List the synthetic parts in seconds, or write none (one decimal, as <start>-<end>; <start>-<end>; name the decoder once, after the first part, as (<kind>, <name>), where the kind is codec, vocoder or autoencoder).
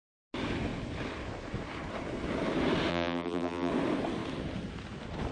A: 2.9-3.7 (vocoder, BigVGAN v2)